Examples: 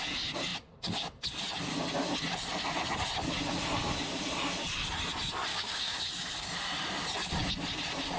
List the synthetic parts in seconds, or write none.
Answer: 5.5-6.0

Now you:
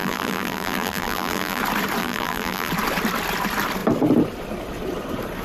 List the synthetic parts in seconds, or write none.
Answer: 0.0-1.6; 2.0-2.7